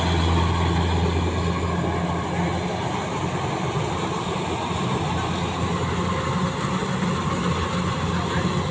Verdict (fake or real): real